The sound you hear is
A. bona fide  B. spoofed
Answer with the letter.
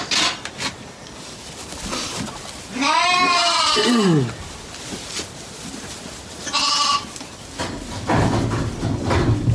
A